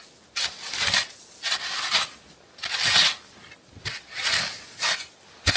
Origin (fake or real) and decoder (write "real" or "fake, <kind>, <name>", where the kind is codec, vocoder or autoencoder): real